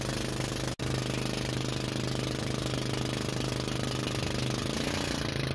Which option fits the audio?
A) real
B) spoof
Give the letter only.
A